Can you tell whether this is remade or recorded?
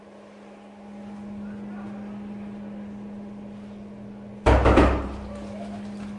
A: recorded